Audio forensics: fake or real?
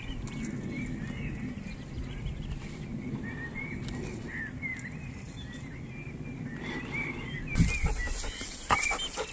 real